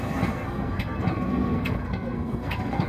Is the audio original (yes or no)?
no